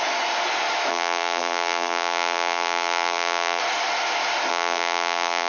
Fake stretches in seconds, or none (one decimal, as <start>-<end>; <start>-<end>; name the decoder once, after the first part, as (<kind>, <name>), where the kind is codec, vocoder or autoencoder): 0.9-3.6 (vocoder, BigVGAN v2); 4.5-5.5